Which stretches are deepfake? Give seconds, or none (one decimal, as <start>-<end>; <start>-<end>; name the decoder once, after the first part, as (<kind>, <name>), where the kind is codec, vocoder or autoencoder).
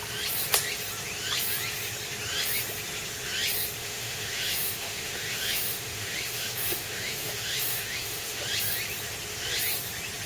3.8-8.4 (autoencoder, DAC-VAE)